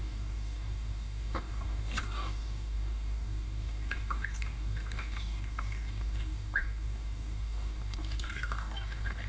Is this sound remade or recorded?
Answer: remade